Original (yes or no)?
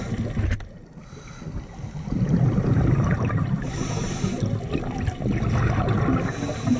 yes